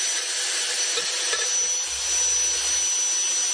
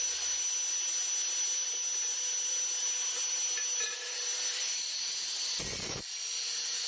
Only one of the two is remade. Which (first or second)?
second